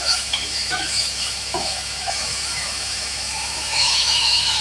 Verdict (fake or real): fake